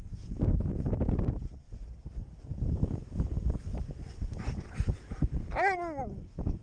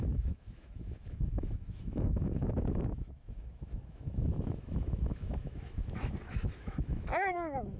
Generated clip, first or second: second